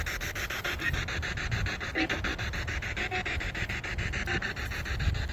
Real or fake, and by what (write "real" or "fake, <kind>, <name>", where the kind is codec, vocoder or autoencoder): real